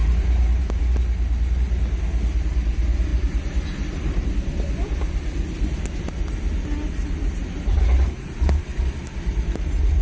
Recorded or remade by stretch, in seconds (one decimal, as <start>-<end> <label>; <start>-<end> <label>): 0.0-0.8 remade; 0.8-3.1 recorded; 3.1-4.3 remade; 4.3-7.4 recorded; 7.4-8.8 remade; 8.8-10.0 recorded